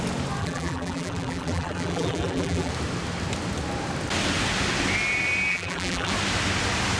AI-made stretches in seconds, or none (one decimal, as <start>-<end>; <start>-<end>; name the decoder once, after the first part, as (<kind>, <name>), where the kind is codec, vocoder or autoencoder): 0.4-2.7 (vocoder, BigVGAN v2); 5.5-6.1